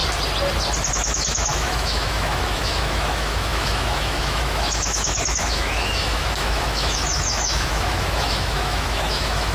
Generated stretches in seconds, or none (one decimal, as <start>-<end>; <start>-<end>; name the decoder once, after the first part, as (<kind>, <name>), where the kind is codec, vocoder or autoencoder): 0.9-9.5 (autoencoder, DAC-VAE)